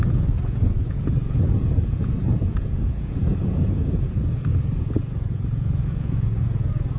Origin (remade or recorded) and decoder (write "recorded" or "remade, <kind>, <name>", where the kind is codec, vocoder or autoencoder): remade, vocoder, Vocos